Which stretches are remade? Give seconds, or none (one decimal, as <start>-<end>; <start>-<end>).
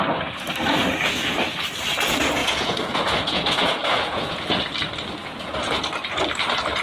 2.4-4.4; 5.2-5.8